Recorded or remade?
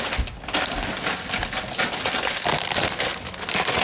recorded